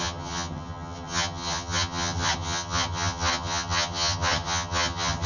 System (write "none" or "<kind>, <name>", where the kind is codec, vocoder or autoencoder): vocoder, HiFi-GAN